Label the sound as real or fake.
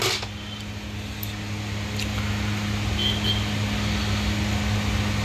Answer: real